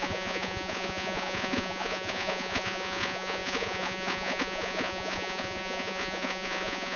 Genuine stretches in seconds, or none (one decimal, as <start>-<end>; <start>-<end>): none